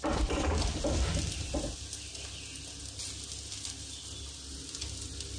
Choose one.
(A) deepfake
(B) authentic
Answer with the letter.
B